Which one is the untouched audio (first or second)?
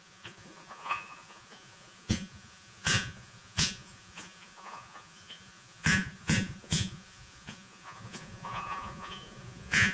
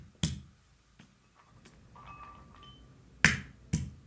second